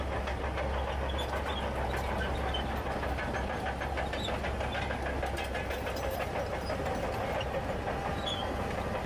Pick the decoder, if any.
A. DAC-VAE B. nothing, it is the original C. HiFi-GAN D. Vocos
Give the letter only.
B